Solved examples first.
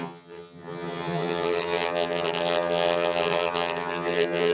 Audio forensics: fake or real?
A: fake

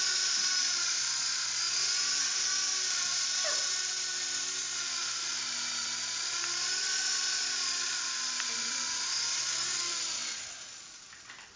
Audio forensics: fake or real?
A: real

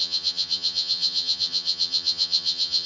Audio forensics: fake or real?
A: fake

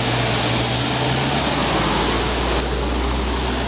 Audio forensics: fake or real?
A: real